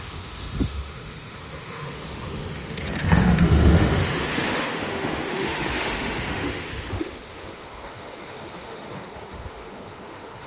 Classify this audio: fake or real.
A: fake